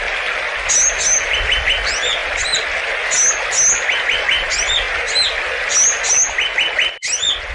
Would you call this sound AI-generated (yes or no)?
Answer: no